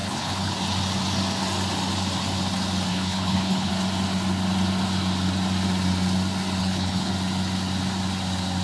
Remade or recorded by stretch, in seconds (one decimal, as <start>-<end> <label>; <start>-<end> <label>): 0.0-0.5 remade; 0.5-2.9 recorded; 2.9-3.7 remade; 3.7-6.6 recorded; 6.6-7.1 remade; 7.1-8.6 recorded